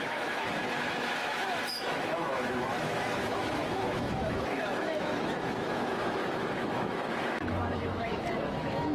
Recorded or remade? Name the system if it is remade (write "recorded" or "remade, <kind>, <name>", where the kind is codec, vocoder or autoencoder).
remade, autoencoder, DAC-VAE